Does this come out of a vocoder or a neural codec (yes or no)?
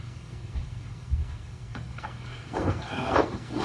yes